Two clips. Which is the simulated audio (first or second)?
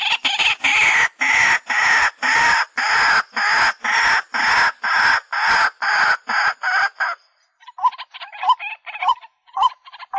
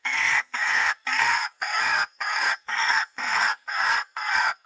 second